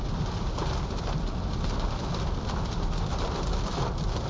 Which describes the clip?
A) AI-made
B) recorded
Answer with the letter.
B